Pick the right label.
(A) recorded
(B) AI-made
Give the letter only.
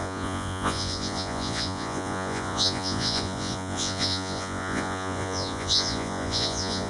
B